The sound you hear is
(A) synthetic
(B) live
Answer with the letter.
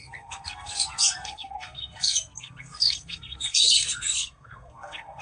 A